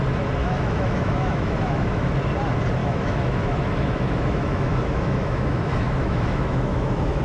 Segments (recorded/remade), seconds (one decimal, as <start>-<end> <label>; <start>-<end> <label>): 0.0-0.4 recorded; 0.4-2.1 remade; 2.1-2.8 recorded; 2.8-7.2 remade